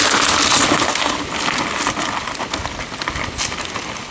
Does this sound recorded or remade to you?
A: recorded